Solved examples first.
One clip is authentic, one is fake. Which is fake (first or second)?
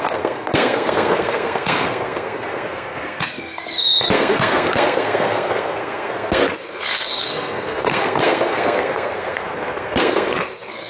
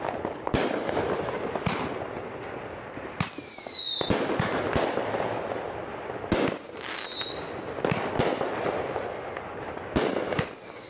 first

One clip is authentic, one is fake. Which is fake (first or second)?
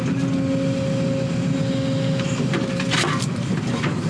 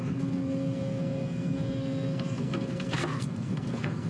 second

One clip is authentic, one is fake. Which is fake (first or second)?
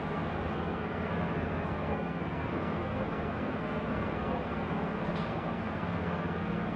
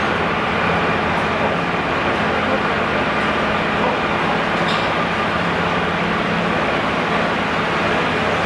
first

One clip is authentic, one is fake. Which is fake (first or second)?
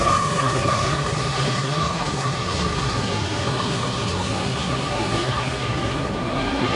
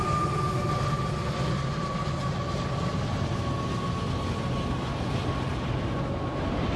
first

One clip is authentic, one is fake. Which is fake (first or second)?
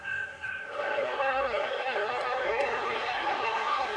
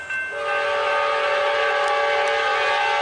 first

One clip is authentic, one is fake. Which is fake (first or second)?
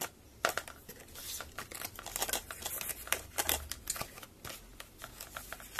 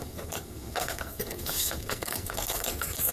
second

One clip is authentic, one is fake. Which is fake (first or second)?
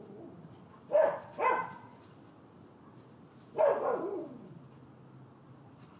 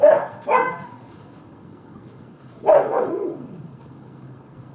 second